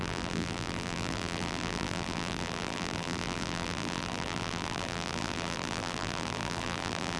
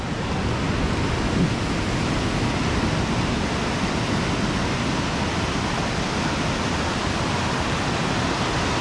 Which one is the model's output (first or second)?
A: first